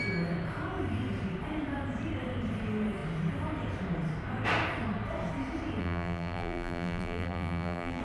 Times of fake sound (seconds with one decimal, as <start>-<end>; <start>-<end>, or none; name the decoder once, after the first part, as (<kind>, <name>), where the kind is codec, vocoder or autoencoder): 5.8-8.0 (vocoder, BigVGAN v2)